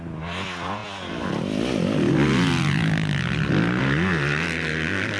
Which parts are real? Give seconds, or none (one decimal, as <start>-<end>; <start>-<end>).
0.0-5.2